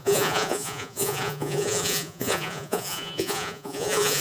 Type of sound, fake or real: fake